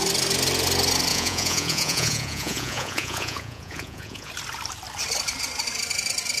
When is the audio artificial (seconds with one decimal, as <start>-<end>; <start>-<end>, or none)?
1.1-4.3

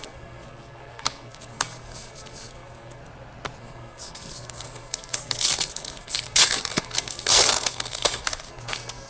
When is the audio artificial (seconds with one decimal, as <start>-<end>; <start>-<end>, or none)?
0.0-3.0; 3.6-9.1

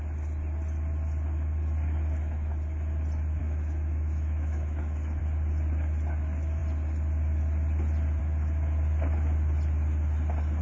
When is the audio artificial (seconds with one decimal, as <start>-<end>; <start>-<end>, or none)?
3.4-5.2

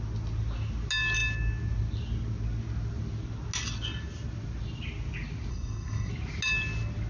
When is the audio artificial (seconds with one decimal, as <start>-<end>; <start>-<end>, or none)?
5.5-6.1

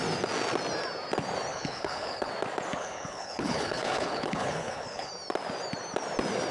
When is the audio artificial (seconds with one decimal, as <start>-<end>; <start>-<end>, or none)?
1.5-2.3; 2.7-5.1

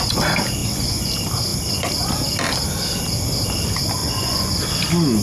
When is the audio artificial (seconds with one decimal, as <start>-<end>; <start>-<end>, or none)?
0.6-1.1; 4.0-4.5

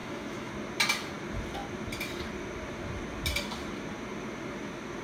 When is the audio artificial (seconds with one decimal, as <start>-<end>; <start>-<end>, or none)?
0.0-0.5

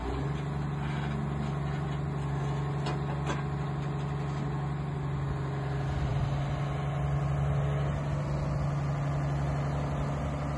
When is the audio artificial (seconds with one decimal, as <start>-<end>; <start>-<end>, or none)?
none